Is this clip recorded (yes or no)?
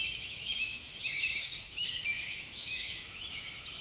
no